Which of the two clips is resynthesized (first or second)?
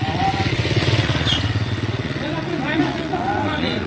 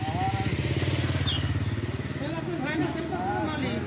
first